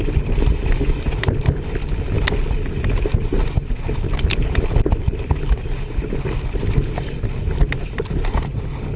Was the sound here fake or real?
real